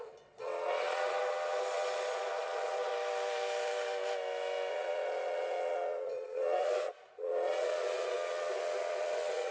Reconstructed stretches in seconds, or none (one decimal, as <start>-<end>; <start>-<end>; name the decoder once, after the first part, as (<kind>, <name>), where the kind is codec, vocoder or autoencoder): 0.0-2.9 (vocoder, Vocos); 4.7-9.5